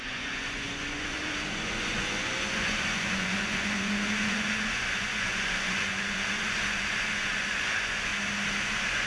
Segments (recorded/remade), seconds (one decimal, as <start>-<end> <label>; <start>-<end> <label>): 0.0-8.1 remade; 8.1-8.6 recorded; 8.6-9.1 remade